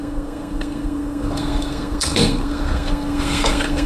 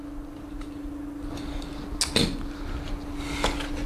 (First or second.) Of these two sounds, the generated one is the first